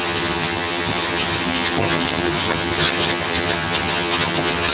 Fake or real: fake